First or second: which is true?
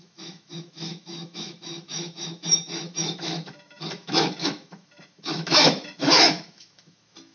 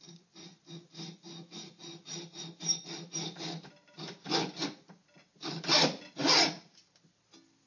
second